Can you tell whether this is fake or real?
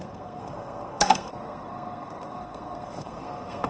fake